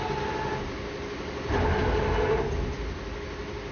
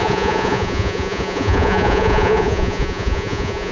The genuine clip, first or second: first